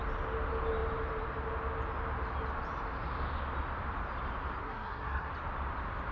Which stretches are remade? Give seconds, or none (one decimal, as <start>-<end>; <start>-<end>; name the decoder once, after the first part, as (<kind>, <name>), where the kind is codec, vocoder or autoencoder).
4.6-5.3 (codec, SNAC)